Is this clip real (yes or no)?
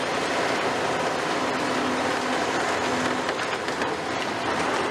yes